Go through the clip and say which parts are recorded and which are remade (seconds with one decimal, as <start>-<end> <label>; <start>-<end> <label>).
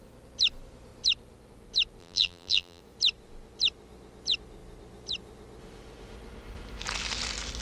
0.0-2.0 recorded; 2.0-2.8 remade; 2.8-7.6 recorded